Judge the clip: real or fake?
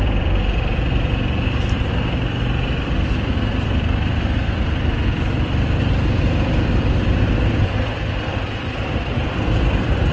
fake